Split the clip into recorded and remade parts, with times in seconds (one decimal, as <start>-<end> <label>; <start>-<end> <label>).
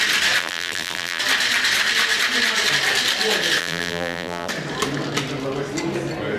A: 0.0-0.4 recorded; 0.4-1.2 remade; 1.2-3.6 recorded; 3.6-4.5 remade; 4.5-6.4 recorded